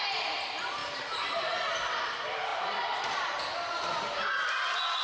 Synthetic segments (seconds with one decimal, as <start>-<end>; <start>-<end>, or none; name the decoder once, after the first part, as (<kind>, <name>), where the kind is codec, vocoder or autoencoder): 2.5-3.4 (vocoder, BigVGAN v2)